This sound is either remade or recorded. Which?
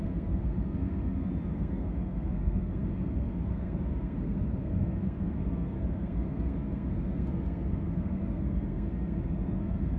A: remade